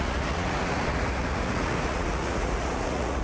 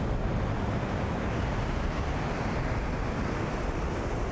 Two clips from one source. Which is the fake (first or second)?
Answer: first